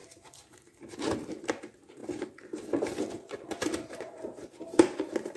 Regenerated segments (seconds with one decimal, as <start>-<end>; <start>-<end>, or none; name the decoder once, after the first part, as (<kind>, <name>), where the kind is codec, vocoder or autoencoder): 0.0-1.3 (vocoder, BigVGAN v2)